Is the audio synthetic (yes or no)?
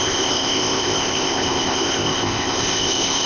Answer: yes